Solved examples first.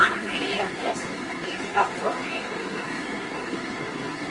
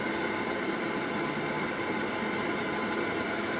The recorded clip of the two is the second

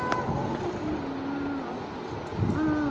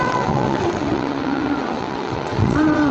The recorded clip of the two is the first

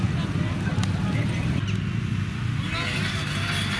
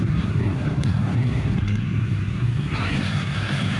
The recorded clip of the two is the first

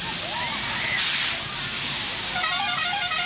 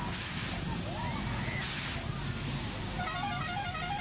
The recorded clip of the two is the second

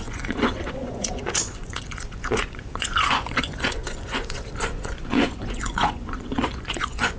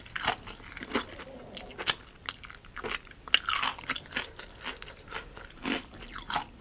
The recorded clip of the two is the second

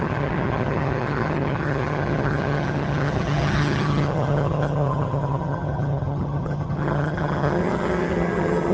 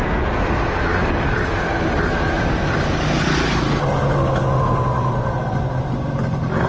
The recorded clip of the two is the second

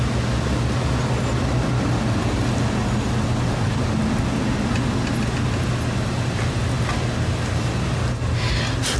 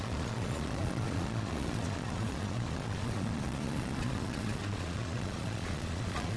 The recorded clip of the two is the first